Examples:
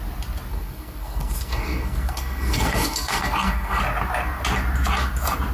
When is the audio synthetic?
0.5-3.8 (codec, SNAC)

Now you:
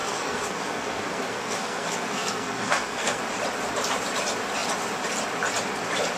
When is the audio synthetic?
0.0-3.2 (codec, SNAC)

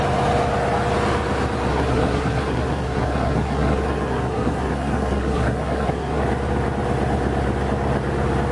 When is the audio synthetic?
1.7-6.2 (codec, SNAC)